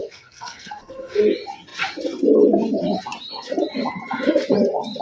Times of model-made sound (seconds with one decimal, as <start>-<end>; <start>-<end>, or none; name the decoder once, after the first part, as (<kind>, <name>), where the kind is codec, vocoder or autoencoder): 0.0-1.2 (codec, SNAC)